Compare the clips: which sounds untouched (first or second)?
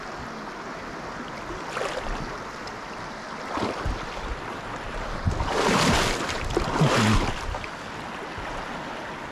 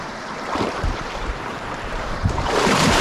first